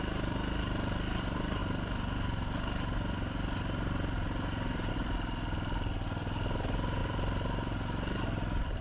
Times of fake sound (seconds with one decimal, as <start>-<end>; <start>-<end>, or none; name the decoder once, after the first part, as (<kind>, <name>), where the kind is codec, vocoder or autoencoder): none